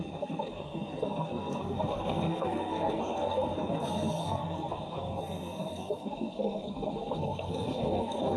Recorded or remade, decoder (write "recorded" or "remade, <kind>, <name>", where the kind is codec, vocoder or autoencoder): remade, codec, SNAC